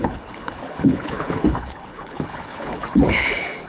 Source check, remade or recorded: remade